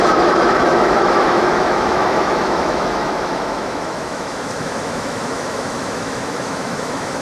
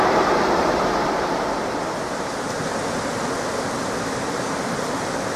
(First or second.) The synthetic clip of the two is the first